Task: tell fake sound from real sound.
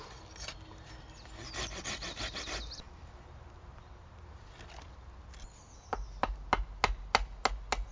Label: real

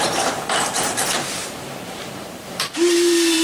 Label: fake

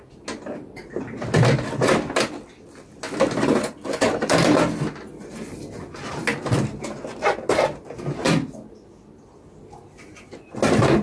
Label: real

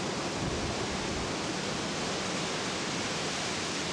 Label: real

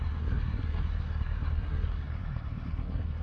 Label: fake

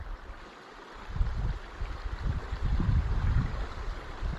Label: fake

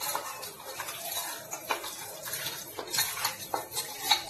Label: fake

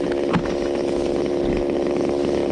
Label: real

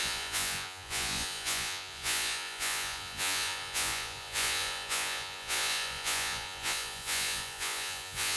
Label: fake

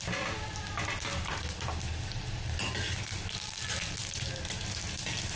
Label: real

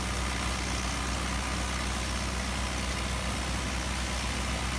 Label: real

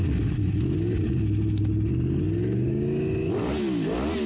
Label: real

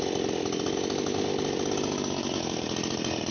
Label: real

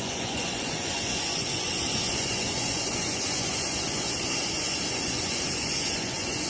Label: fake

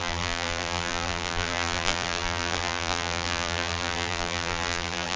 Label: fake